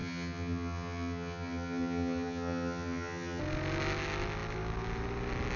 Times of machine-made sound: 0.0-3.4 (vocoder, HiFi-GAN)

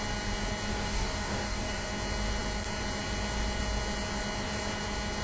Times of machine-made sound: 0.7-1.9 (codec, DAC)

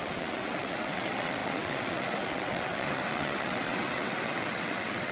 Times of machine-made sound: 0.0-5.1 (vocoder, WaveNeXt)

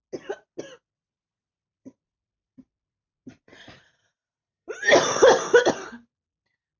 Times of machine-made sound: 1.0-5.1 (vocoder, BigVGAN v2)

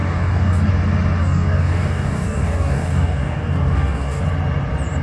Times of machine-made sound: 0.0-0.7 (codec, DAC); 1.2-4.2

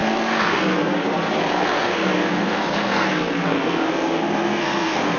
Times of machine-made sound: 0.0-0.9 (codec, SNAC); 1.4-5.2

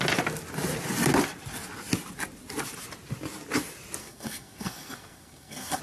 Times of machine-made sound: 4.0-5.8 (codec, SNAC)

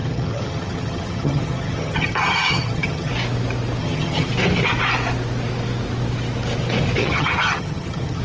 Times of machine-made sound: 0.0-3.1 (vocoder, HiFi-GAN); 3.8-4.3; 7.0-8.2